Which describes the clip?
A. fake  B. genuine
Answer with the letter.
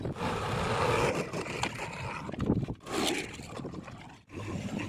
B